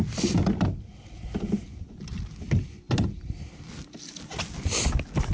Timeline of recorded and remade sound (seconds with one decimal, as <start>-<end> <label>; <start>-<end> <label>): 0.0-5.3 recorded